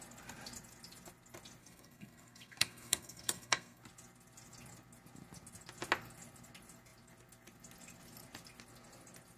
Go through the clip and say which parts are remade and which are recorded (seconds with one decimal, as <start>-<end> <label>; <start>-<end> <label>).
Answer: 0.0-1.6 recorded; 1.6-3.8 remade; 3.8-9.4 recorded